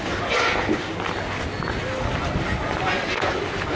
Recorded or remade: recorded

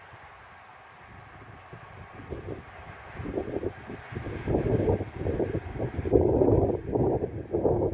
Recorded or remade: recorded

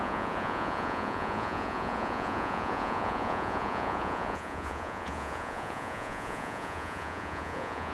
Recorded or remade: remade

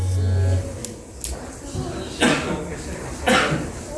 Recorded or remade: recorded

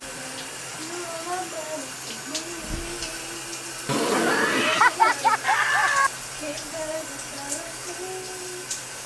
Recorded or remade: recorded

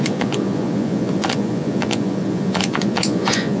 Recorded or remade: remade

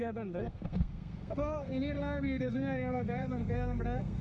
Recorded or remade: remade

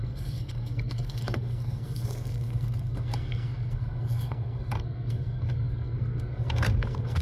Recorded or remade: remade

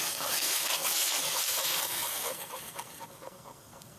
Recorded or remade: remade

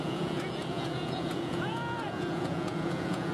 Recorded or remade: remade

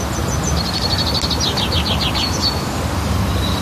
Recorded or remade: recorded